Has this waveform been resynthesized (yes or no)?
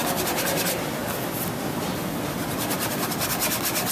no